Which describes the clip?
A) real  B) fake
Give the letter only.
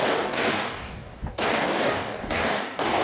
B